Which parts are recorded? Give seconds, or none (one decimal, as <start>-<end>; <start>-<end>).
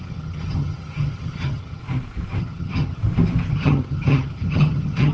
1.8-2.4; 3.0-3.5